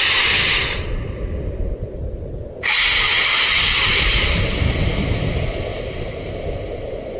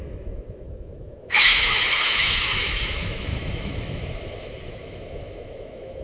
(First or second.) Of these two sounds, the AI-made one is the second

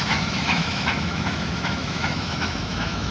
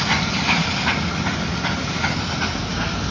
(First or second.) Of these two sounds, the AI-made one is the first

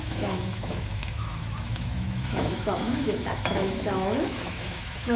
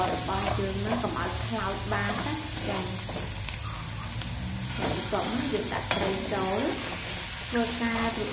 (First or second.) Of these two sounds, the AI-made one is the first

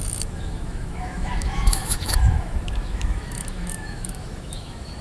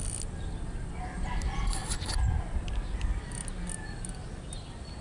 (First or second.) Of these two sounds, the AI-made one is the first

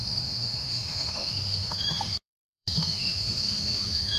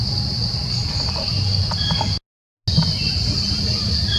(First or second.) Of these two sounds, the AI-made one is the first